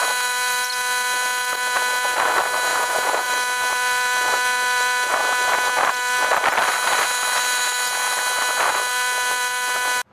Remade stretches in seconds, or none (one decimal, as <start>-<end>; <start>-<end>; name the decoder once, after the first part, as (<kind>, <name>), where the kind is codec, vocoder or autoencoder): 2.7-3.3 (vocoder, Vocos)